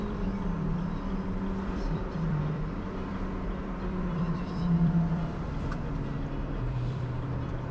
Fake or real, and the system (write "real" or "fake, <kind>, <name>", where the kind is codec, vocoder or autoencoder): fake, vocoder, BigVGAN v2